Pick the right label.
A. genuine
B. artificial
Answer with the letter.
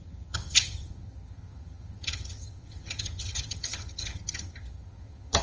B